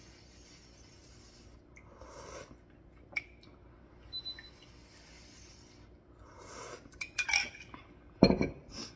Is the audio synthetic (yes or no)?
no